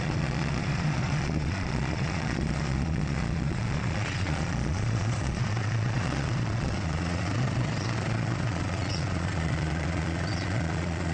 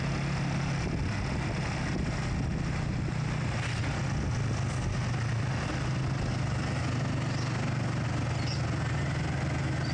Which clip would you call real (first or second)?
second